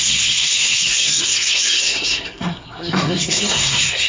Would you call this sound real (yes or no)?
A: no